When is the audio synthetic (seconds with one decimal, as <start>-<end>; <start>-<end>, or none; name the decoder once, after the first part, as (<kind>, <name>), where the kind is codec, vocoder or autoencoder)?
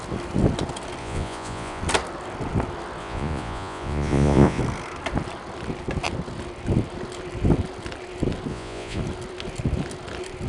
1.0-1.8 (vocoder, Vocos); 3.0-4.6; 8.5-9.0